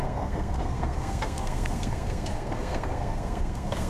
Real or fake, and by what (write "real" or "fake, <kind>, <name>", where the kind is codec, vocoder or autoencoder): fake, codec, SNAC